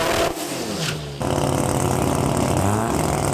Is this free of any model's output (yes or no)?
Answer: yes